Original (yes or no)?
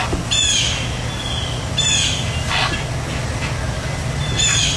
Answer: yes